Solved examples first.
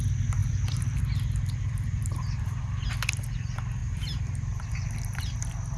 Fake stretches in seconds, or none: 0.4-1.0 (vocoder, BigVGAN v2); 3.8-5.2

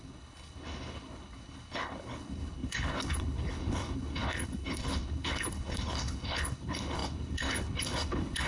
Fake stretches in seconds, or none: 0.0-8.5 (codec, HILCodec)

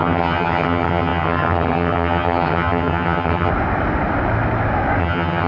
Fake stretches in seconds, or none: 0.0-3.5 (vocoder, HiFi-GAN); 5.0-5.5